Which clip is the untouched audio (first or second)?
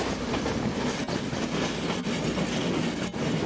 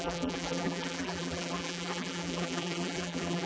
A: first